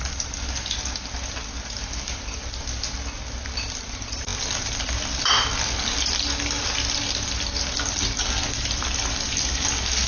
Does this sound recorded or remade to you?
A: recorded